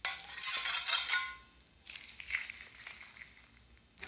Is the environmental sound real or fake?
real